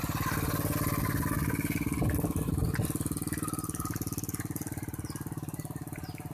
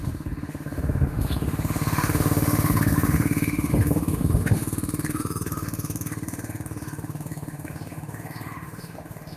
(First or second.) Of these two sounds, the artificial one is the second